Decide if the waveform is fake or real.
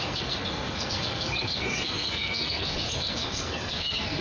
fake